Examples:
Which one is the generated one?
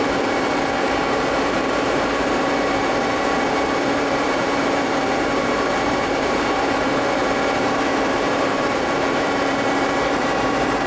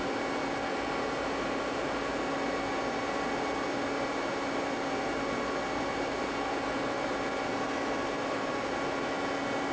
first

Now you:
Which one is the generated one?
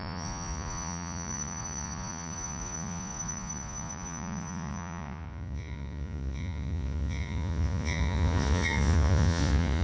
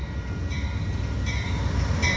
first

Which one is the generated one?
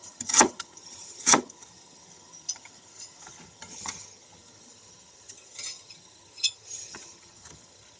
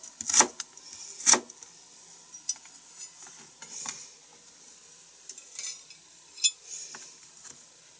first